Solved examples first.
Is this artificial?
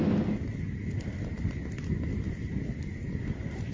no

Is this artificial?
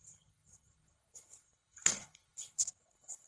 yes